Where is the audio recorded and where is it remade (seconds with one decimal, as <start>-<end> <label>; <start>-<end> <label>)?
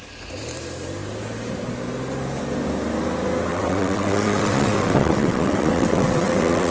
0.0-3.5 recorded; 3.5-6.7 remade